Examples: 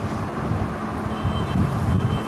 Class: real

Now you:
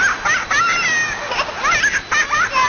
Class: real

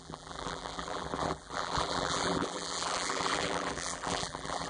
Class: fake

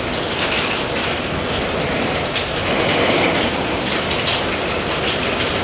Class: real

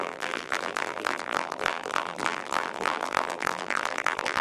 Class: fake